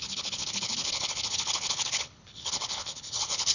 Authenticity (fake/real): fake